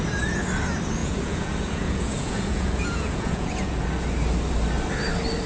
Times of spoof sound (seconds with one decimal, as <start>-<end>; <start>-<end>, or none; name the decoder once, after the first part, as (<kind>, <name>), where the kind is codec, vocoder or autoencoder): 1.0-3.9 (vocoder, Vocos)